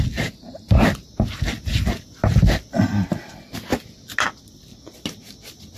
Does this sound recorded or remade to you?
recorded